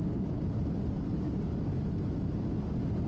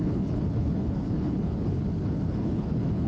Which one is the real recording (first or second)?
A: first